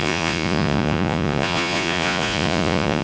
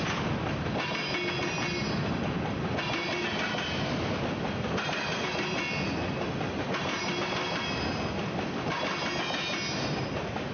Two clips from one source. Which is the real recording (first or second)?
second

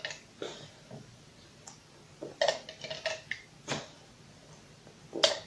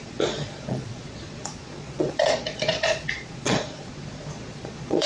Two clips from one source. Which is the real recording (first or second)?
first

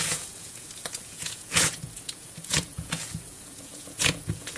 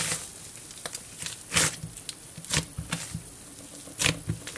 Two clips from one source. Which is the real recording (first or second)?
second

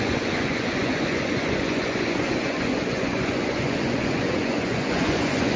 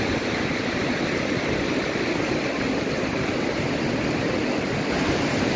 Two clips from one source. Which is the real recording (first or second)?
second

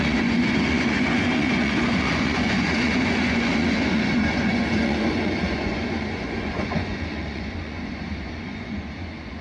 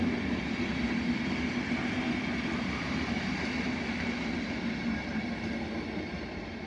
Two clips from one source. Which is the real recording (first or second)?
second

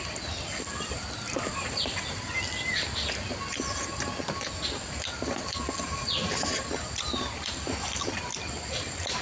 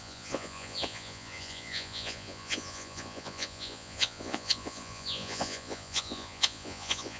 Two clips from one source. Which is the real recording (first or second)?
first